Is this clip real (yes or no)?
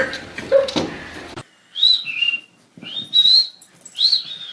no